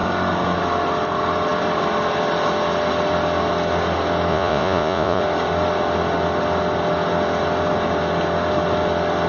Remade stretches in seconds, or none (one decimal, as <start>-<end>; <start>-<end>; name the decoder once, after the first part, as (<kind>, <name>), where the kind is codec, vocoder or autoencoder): 4.3-5.2 (vocoder, Vocos)